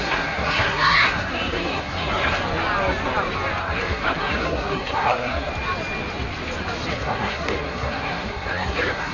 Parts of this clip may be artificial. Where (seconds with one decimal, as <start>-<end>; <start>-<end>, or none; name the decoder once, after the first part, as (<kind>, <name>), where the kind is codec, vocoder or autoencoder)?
0.0-2.4 (codec, SNAC); 3.6-5.5; 6.9-9.1